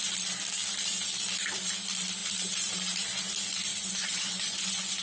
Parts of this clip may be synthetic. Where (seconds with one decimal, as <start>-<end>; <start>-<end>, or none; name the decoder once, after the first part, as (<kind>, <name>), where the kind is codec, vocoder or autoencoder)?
3.7-5.0 (vocoder, Vocos)